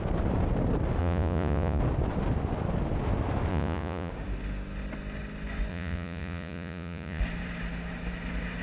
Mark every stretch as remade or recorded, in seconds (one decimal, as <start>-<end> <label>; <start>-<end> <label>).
0.0-1.0 recorded; 1.0-1.8 remade; 1.8-3.5 recorded; 3.5-4.1 remade; 4.1-5.7 recorded; 5.7-7.2 remade; 7.2-8.6 recorded